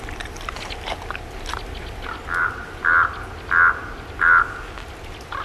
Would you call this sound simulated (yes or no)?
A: no